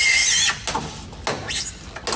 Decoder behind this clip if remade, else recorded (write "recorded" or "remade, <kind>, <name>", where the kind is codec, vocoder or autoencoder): recorded